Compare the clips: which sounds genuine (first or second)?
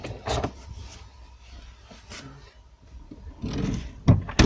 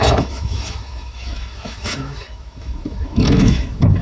first